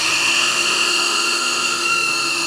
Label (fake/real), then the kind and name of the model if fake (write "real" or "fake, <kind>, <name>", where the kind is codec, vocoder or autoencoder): fake, autoencoder, DAC-VAE